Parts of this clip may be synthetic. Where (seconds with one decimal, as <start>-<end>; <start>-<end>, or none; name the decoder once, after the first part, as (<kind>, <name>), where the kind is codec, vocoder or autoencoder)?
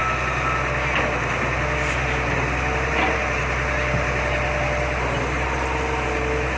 none